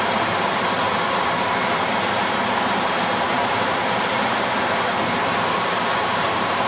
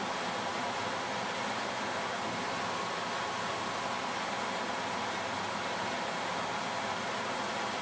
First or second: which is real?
second